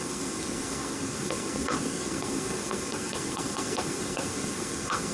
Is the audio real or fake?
fake